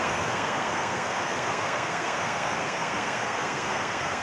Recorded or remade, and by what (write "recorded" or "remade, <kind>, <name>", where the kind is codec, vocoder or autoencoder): remade, codec, SNAC